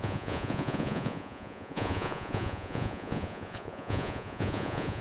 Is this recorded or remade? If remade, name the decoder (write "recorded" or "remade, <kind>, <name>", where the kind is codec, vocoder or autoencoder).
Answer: remade, vocoder, Vocos